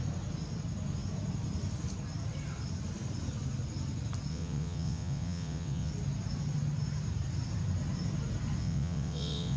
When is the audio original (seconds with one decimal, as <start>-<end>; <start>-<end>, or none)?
0.0-4.3; 5.9-8.6